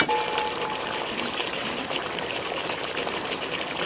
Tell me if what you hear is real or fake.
fake